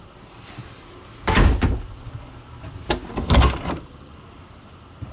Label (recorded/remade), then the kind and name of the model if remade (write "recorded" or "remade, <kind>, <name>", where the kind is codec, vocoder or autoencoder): recorded